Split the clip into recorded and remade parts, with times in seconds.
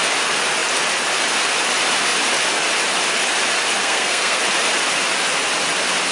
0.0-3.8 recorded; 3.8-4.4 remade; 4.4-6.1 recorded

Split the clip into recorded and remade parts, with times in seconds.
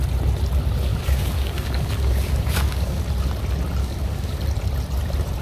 0.0-0.9 recorded; 0.9-3.0 remade; 3.0-3.8 recorded; 3.8-4.4 remade; 4.4-5.4 recorded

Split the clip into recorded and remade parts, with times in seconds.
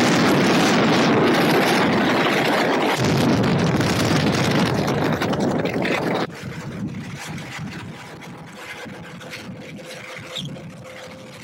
0.0-3.5 recorded; 3.5-7.9 remade; 7.9-11.4 recorded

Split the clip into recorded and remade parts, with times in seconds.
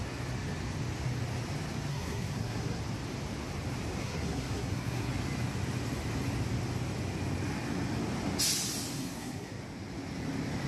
0.0-1.9 recorded; 1.9-2.8 remade; 2.8-4.0 recorded; 4.0-5.1 remade; 5.1-8.9 recorded; 8.9-9.6 remade; 9.6-10.7 recorded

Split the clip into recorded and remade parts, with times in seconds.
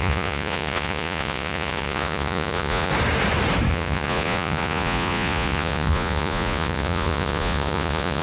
0.0-2.9 remade; 2.9-3.7 recorded; 3.7-8.2 remade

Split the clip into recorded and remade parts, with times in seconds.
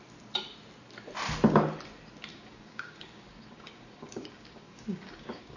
0.0-2.3 recorded; 2.3-5.6 remade